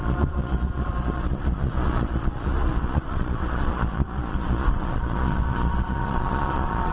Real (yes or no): no